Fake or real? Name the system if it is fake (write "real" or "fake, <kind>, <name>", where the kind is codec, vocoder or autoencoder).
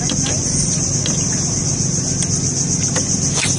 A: real